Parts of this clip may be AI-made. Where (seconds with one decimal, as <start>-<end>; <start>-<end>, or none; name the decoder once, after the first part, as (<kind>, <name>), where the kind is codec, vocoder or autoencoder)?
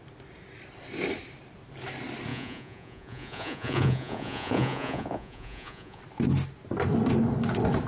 2.3-6.0 (vocoder, Vocos)